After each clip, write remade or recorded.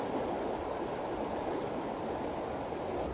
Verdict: recorded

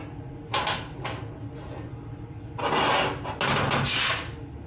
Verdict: recorded